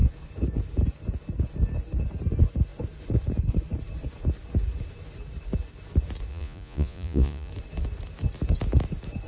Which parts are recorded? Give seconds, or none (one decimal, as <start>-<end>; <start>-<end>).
0.0-6.3; 7.5-9.3